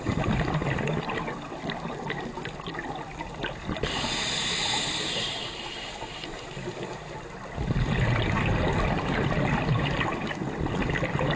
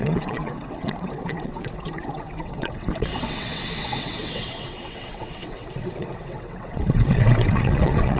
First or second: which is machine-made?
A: second